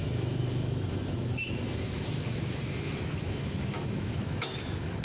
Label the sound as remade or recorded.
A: remade